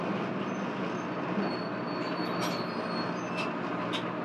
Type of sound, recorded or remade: recorded